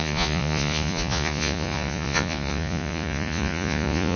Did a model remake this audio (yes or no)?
yes